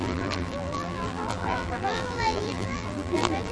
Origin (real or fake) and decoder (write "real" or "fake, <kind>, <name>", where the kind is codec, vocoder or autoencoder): fake, vocoder, BigVGAN v2